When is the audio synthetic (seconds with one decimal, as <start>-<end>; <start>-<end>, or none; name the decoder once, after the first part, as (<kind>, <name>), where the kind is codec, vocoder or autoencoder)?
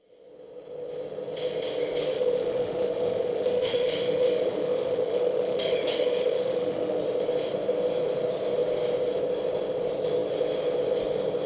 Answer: 2.1-7.0 (autoencoder, DAC-VAE)